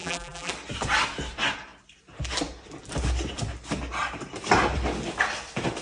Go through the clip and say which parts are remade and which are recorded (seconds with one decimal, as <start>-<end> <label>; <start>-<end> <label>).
0.0-0.5 remade; 0.5-5.8 recorded